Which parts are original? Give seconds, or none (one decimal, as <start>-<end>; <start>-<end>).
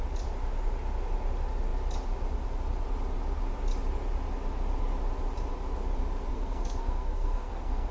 0.0-6.3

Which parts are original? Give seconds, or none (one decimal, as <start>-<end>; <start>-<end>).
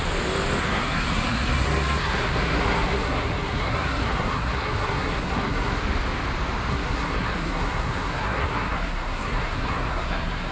0.0-0.6; 5.8-6.7